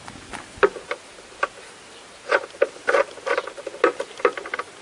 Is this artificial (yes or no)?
no